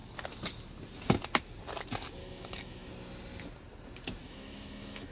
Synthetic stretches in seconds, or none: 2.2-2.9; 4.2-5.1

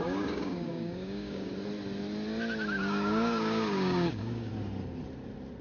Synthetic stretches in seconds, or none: 0.0-1.5; 2.8-4.5

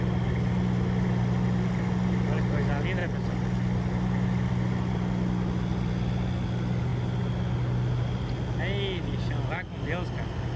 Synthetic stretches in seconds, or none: none